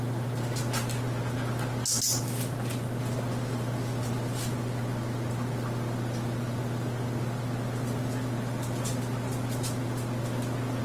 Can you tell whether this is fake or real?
real